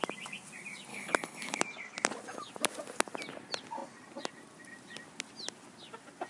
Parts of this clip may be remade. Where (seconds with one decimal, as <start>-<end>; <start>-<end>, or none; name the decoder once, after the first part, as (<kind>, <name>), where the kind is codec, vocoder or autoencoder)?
0.9-1.6 (codec, HILCodec)